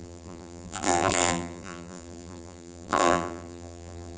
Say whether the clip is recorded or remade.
remade